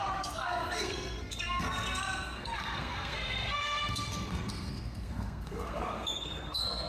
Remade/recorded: remade